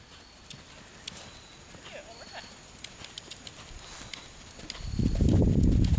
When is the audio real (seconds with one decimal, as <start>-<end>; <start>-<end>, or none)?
0.0-6.0